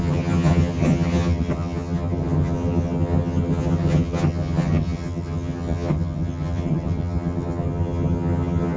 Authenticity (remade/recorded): remade